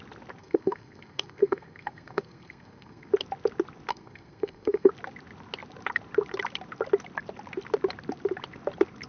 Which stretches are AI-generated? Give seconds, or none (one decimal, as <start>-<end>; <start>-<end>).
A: 0.4-3.1; 3.9-4.9